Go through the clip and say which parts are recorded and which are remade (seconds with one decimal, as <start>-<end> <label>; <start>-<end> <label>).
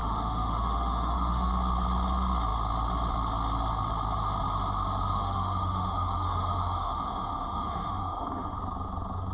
0.0-1.5 remade; 1.5-5.1 recorded; 5.1-8.6 remade; 8.6-9.3 recorded